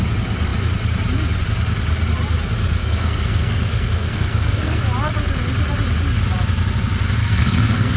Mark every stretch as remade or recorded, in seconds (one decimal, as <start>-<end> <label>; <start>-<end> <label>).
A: 0.0-2.8 recorded; 2.8-4.8 remade; 4.8-7.2 recorded; 7.2-8.0 remade